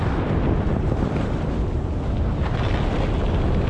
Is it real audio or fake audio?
real